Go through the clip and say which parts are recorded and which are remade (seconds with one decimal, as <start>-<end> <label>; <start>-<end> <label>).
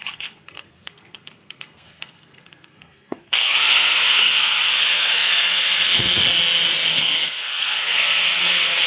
0.0-6.3 remade; 6.3-6.9 recorded; 6.9-8.9 remade